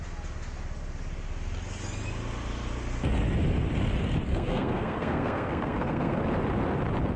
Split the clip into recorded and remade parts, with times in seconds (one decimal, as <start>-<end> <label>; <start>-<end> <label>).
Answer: 0.0-4.3 recorded; 4.3-6.2 remade; 6.2-7.2 recorded

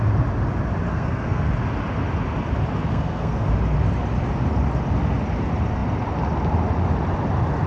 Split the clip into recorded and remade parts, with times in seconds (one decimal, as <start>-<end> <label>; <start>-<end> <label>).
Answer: 0.0-0.9 recorded; 0.9-1.5 remade; 1.5-2.9 recorded; 2.9-3.5 remade; 3.5-7.7 recorded

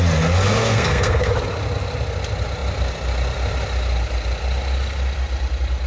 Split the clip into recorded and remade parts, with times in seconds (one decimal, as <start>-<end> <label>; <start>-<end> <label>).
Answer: 0.0-0.6 recorded; 0.6-1.3 remade; 1.3-5.9 recorded

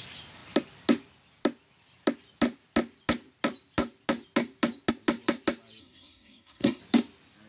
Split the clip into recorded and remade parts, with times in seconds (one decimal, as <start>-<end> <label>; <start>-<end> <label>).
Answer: 0.0-5.8 recorded; 5.8-6.8 remade; 6.8-7.5 recorded

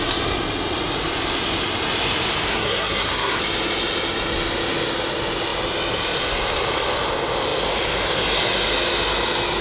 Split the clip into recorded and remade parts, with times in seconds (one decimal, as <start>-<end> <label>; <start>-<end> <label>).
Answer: 0.0-2.5 recorded; 2.5-3.4 remade; 3.4-9.6 recorded